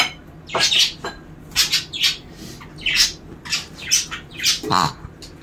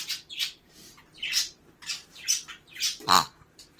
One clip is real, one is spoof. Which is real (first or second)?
first